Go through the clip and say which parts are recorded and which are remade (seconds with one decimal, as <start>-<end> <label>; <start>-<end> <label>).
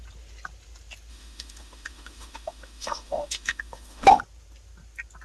0.0-1.1 recorded; 1.1-4.2 remade; 4.2-5.2 recorded